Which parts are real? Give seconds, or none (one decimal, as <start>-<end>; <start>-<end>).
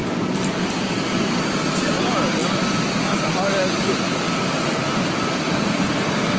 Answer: 0.0-6.4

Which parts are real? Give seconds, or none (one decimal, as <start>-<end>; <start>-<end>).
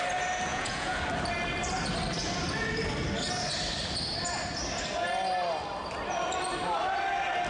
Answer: 0.0-0.5; 1.0-7.5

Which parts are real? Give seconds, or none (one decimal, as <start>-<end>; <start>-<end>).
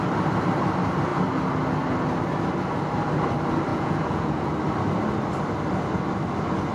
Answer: 0.0-3.7; 4.5-6.7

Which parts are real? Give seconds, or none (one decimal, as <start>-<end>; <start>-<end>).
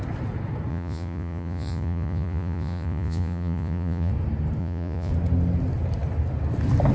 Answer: 0.0-0.7; 4.1-4.6; 5.1-6.9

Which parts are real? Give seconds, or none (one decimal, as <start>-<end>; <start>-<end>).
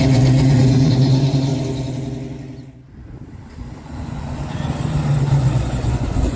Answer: 1.5-3.5; 4.4-5.3